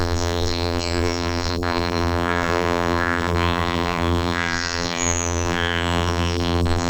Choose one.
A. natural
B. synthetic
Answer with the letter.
B